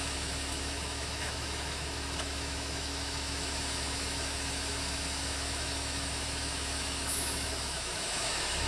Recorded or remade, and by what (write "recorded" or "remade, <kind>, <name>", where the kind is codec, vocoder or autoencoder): remade, autoencoder, DAC-VAE